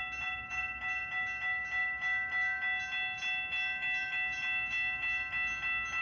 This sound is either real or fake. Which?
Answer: real